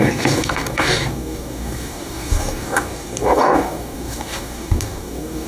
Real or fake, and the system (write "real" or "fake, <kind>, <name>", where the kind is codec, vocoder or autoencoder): fake, codec, DAC